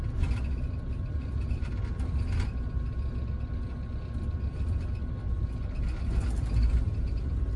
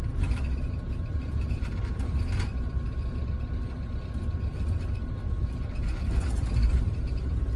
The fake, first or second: second